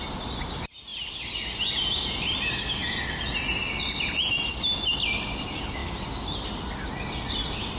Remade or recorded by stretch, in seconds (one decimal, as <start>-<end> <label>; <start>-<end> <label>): 0.0-7.8 recorded